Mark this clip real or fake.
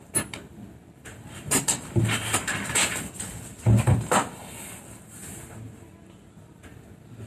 real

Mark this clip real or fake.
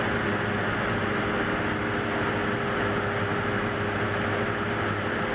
real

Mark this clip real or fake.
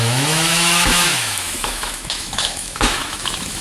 fake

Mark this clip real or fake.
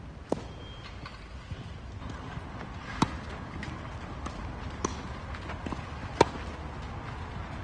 real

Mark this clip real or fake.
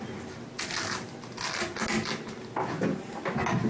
real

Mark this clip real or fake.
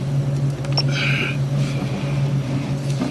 real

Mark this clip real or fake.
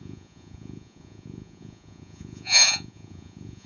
fake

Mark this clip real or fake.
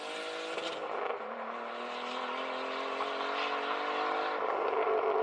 real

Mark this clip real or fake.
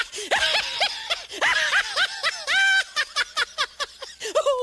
real